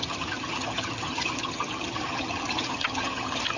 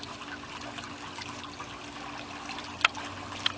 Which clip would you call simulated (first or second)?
first